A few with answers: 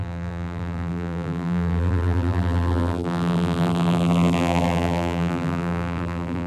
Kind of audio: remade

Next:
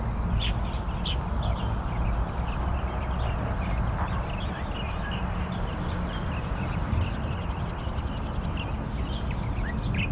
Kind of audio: recorded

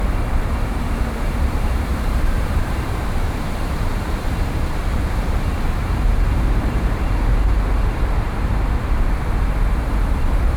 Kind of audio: remade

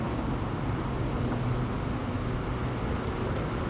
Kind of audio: recorded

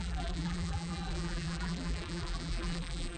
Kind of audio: remade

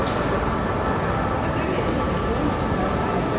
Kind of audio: recorded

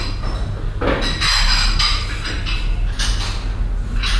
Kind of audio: recorded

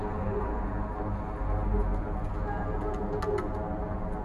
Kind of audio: recorded